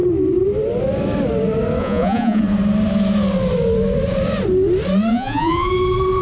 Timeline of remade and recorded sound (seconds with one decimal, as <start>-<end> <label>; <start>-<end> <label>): 0.0-1.8 recorded; 1.8-2.4 remade; 2.4-5.1 recorded; 5.1-5.7 remade; 5.7-6.2 recorded